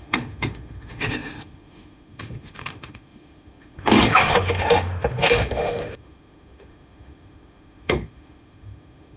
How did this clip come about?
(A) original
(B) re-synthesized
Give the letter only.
B